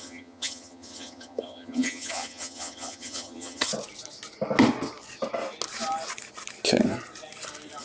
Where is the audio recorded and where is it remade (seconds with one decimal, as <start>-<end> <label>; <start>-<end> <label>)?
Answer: 0.0-3.7 remade; 3.7-7.8 recorded